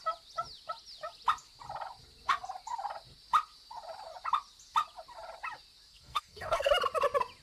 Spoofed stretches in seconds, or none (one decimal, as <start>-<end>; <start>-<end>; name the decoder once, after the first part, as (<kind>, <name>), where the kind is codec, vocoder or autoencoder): 5.9-6.7 (codec, SNAC)